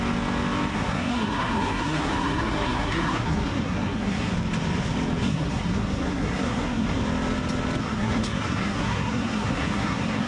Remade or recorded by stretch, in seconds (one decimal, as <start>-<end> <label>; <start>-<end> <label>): 0.0-0.7 recorded; 0.7-4.3 remade; 4.3-5.2 recorded; 5.2-7.0 remade; 7.0-7.8 recorded; 7.8-10.3 remade